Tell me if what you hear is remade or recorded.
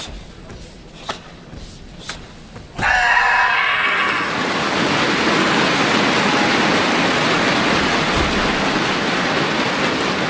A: recorded